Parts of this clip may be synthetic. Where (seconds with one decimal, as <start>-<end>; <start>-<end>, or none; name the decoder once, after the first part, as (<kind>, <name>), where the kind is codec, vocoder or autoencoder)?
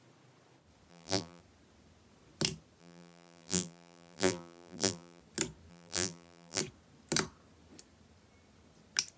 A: 0.9-1.4 (vocoder, BigVGAN v2); 2.8-5.2; 5.7-6.6